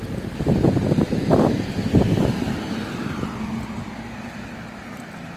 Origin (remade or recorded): recorded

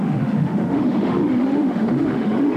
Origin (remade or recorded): remade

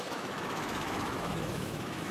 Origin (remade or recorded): remade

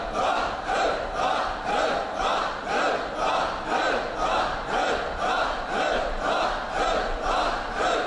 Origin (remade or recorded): recorded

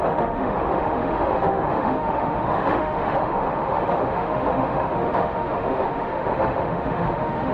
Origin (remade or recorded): remade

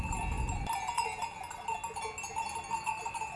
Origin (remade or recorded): recorded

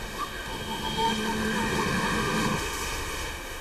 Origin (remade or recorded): remade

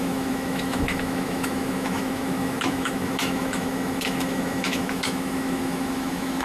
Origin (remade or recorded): remade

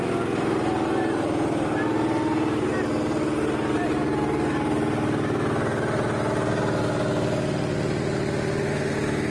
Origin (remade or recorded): recorded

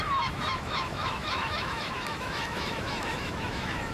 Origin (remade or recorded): remade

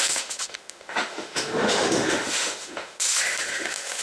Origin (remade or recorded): remade